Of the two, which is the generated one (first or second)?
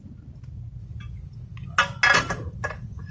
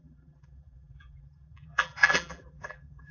second